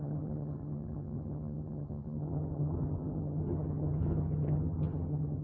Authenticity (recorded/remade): remade